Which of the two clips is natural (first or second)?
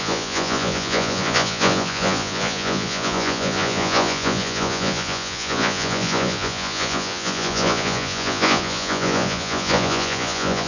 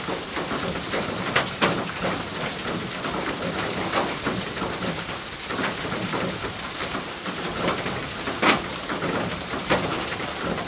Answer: second